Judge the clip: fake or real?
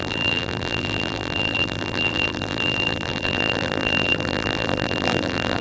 fake